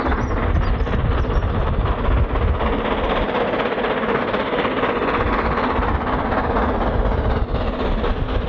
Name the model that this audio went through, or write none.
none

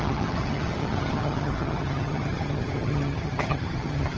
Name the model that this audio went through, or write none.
vocoder, HiFi-GAN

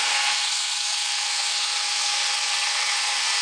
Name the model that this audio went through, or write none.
codec, SNAC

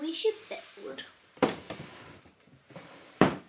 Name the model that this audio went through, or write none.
vocoder, BigVGAN v2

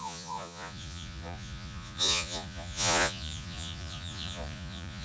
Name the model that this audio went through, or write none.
vocoder, Vocos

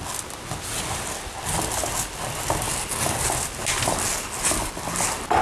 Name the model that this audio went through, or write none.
none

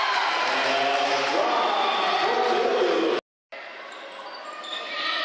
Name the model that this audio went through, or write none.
none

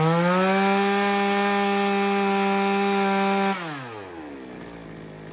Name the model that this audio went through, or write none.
none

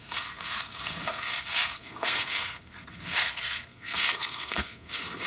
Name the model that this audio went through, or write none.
codec, SNAC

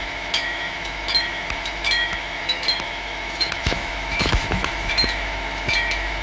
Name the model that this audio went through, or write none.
autoencoder, DAC-VAE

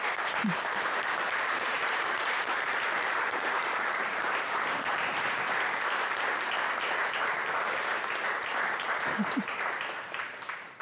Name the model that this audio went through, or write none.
vocoder, BigVGAN v2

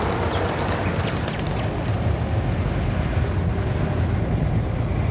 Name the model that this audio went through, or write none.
none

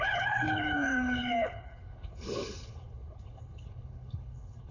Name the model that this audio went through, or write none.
codec, HILCodec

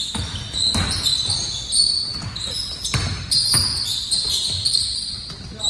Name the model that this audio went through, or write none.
none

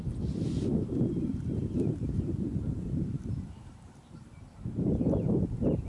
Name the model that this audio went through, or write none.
vocoder, BigVGAN v2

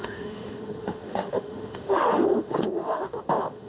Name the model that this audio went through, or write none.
autoencoder, DAC-VAE